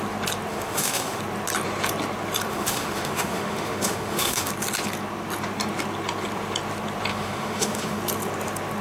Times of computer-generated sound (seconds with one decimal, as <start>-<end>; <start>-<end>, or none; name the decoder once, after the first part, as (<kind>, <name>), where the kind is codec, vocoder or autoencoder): 0.5-1.2 (autoencoder, DAC-VAE); 2.5-4.5; 7.1-8.0